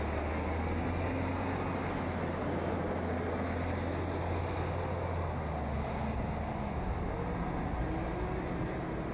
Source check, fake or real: real